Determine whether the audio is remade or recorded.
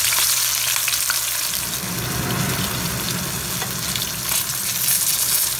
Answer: recorded